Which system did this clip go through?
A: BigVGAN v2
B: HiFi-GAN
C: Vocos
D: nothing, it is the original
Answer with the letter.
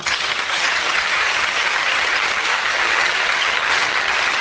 B